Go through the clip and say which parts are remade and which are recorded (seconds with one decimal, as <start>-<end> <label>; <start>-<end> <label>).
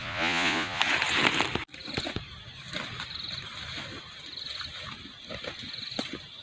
0.0-0.8 remade; 0.8-6.4 recorded